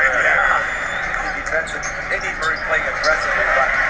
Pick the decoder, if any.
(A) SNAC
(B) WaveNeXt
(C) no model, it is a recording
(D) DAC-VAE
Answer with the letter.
C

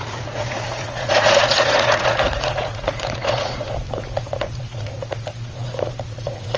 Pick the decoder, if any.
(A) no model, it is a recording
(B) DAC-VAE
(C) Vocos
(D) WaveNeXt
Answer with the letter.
C